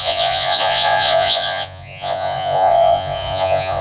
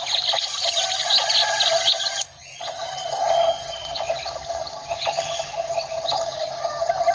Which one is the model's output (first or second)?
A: first